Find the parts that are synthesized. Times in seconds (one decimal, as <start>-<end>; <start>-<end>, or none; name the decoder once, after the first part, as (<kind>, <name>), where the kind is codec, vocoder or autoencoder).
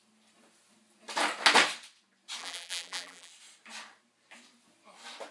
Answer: 2.4-3.3 (vocoder, BigVGAN v2)